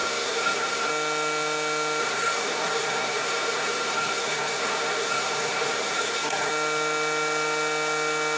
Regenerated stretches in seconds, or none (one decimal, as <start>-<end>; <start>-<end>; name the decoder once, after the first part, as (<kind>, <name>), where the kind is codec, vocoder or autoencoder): 0.0-0.9 (codec, SNAC); 2.0-6.5